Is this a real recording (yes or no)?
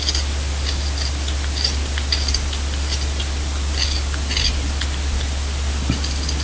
yes